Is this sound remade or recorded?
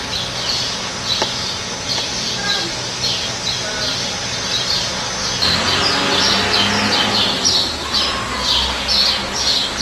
recorded